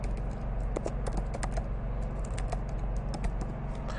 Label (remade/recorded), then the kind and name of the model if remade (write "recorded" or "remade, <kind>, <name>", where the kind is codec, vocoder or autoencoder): recorded